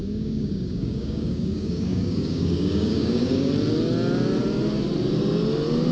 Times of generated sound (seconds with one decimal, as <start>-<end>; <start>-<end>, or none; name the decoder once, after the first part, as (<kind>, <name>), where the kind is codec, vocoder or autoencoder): 0.0-3.5 (codec, DAC)